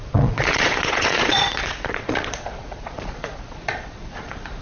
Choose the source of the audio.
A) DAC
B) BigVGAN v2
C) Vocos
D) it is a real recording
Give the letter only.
C